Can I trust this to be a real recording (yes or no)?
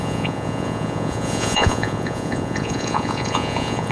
no